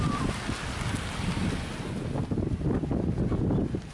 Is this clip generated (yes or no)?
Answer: no